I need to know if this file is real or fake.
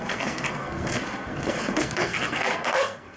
fake